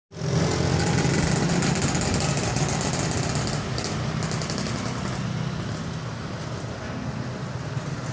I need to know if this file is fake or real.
real